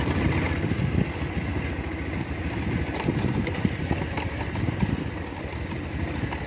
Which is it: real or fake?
real